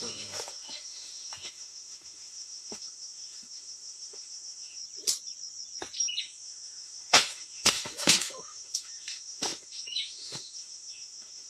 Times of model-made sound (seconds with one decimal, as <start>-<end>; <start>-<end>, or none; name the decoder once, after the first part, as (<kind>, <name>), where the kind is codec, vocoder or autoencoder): 0.0-4.8 (autoencoder, DAC-VAE); 6.2-11.5